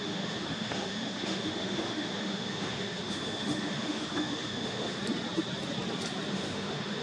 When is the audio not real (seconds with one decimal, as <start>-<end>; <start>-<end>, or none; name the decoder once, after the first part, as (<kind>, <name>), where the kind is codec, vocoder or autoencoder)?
0.0-5.0 (autoencoder, DAC-VAE); 6.3-7.0